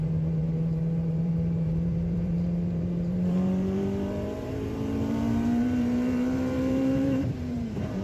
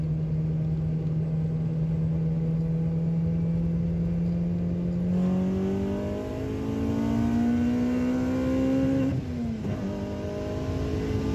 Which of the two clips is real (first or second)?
second